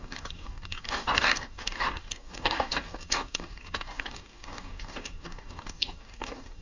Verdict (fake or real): fake